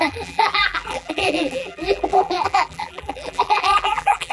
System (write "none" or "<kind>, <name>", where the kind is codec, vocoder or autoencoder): vocoder, BigVGAN v2